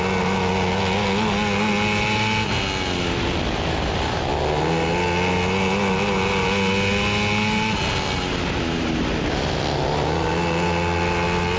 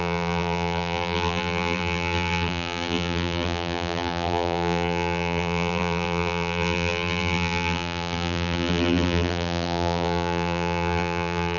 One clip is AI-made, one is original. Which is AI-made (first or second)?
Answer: second